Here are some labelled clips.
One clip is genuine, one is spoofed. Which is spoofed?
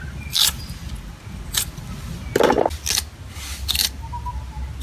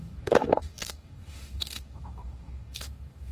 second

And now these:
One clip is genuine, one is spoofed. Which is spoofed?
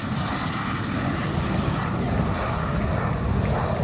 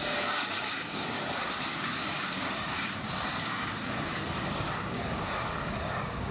second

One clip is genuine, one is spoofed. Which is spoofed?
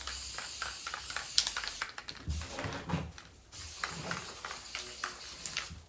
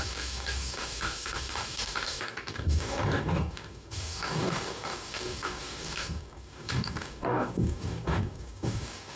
second